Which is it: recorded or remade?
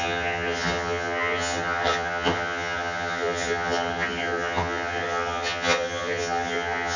remade